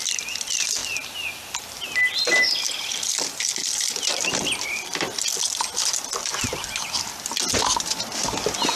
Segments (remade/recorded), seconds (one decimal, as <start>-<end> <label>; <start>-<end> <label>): 0.0-8.8 recorded